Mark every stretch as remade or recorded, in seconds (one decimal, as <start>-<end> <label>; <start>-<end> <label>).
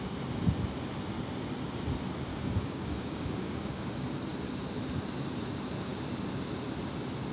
0.0-2.3 recorded; 2.3-3.8 remade; 3.8-7.3 recorded